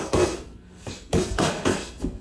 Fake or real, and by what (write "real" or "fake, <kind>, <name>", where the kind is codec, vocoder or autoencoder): fake, codec, SNAC